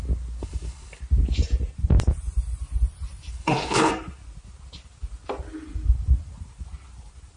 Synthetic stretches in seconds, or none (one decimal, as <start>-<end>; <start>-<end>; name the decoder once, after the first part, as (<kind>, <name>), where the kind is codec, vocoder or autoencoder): 0.4-1.0 (codec, HILCodec); 3.3-3.9